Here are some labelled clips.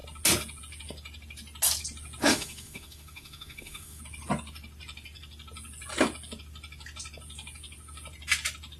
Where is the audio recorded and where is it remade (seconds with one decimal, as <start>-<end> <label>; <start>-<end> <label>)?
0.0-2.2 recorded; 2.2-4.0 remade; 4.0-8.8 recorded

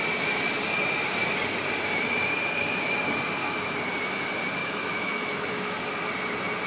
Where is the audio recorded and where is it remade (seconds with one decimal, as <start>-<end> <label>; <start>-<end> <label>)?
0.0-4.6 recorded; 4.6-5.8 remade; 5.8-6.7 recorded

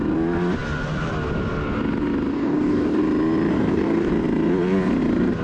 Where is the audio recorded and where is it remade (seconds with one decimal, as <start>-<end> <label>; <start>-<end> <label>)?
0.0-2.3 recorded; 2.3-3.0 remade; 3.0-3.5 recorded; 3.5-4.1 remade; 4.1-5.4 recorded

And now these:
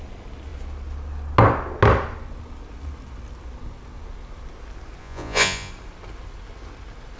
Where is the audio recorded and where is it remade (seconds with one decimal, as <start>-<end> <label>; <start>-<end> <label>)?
0.0-5.0 recorded; 5.0-5.7 remade; 5.7-7.2 recorded

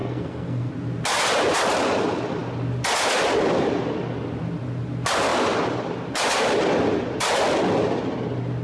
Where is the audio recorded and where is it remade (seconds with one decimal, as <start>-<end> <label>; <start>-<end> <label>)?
0.0-0.7 remade; 0.7-8.6 recorded

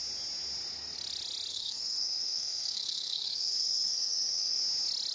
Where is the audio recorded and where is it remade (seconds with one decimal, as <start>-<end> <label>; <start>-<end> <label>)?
0.0-1.5 recorded; 1.5-4.6 remade; 4.6-5.1 recorded

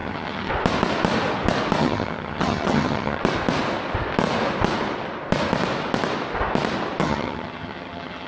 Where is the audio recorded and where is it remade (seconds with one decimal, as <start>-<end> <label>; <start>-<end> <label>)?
0.0-0.5 remade; 0.5-1.8 recorded; 1.8-3.2 remade; 3.2-7.0 recorded; 7.0-8.3 remade

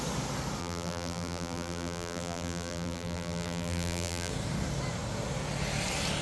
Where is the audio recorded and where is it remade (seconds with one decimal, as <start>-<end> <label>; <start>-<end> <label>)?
0.0-0.6 recorded; 0.6-4.3 remade; 4.3-6.2 recorded